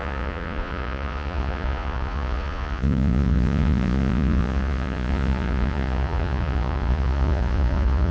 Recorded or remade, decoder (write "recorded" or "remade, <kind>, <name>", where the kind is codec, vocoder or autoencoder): remade, vocoder, Vocos